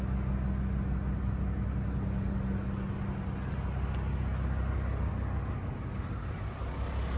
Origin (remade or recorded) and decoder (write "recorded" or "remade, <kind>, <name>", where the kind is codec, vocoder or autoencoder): recorded